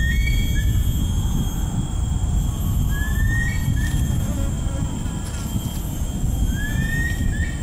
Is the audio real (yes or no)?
yes